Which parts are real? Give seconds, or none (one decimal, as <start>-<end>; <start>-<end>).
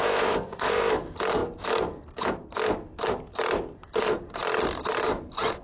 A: 0.9-5.6